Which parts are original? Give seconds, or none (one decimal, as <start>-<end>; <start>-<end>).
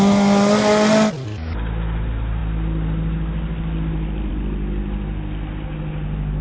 0.0-6.4